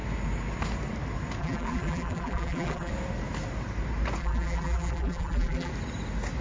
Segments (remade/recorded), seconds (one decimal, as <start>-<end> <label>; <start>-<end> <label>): 0.0-1.4 recorded; 1.4-2.9 remade; 2.9-4.2 recorded; 4.2-5.7 remade; 5.7-6.4 recorded